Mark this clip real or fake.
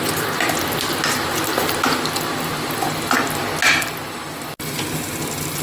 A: real